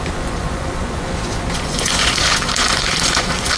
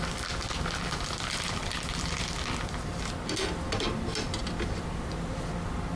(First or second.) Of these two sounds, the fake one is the first